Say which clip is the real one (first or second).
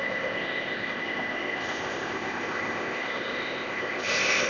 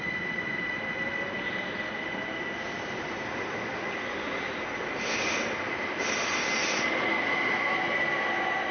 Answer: second